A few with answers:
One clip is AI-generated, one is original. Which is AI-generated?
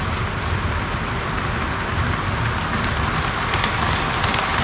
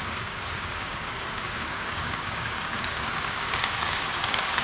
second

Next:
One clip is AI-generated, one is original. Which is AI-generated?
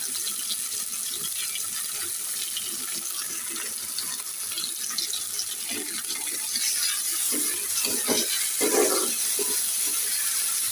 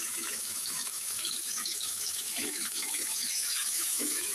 second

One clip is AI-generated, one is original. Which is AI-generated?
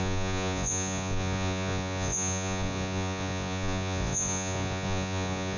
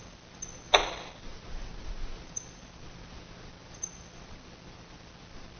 first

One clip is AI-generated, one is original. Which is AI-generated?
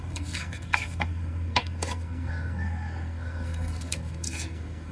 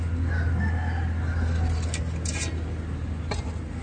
first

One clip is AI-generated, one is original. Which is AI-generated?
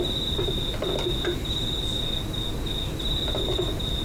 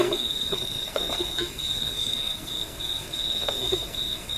second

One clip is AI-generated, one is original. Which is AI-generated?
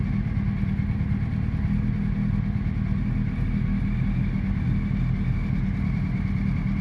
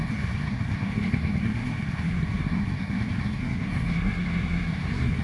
second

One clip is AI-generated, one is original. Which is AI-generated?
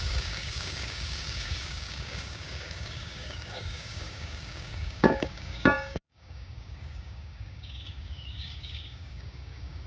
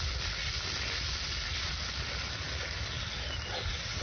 first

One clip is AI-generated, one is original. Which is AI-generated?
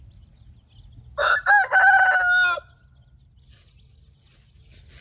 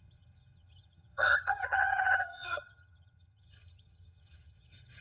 second